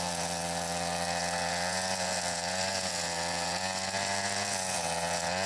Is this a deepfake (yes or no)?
yes